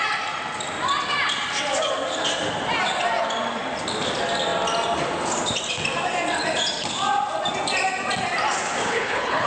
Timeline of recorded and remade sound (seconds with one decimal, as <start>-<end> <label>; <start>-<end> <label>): 0.0-8.8 recorded; 8.8-9.5 remade